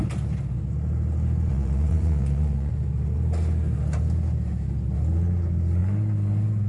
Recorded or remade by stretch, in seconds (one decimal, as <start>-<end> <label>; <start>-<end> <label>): 0.0-1.5 recorded; 1.5-2.7 remade; 2.7-6.7 recorded